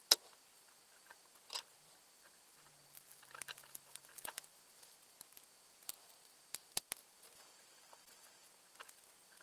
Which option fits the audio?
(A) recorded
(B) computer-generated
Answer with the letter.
A